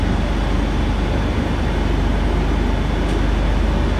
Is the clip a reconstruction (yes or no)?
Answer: no